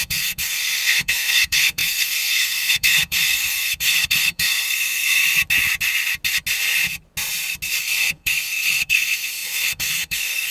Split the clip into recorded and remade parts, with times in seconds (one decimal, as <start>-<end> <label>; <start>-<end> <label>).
0.0-5.2 remade; 5.2-7.8 recorded; 7.8-10.5 remade